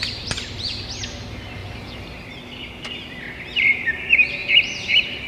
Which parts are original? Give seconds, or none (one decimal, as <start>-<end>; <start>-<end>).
0.0-1.6; 3.2-4.4